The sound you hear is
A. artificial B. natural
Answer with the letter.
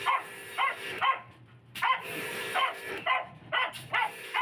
A